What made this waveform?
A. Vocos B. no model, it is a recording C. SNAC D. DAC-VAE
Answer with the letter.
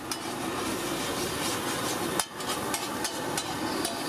B